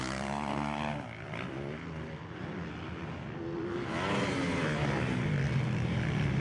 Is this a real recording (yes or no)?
yes